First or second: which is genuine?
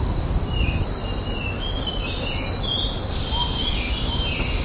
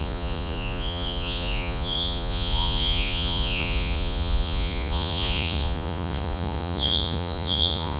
first